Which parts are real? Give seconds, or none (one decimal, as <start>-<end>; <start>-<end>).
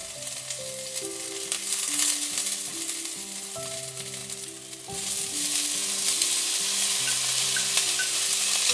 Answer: 0.0-8.7